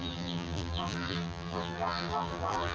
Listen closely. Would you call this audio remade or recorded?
remade